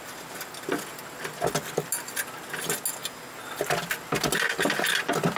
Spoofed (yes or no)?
no